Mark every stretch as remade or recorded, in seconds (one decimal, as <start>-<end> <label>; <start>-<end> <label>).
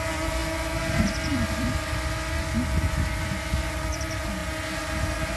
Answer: 0.0-5.4 recorded